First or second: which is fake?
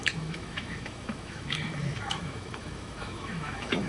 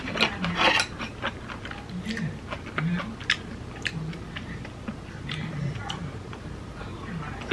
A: first